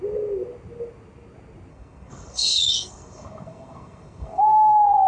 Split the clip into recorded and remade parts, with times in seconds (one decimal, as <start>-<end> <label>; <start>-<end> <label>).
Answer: 0.0-1.7 recorded; 1.7-5.1 remade